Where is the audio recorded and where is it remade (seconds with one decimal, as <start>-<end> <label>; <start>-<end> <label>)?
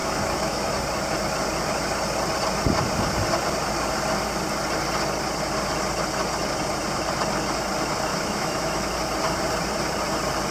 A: 0.0-0.7 remade; 0.7-8.1 recorded; 8.1-8.9 remade; 8.9-10.5 recorded